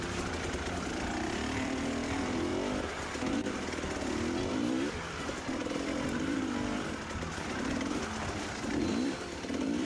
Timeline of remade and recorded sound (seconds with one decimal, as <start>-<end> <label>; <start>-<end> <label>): 0.0-2.5 remade; 2.5-4.4 recorded; 4.4-9.9 remade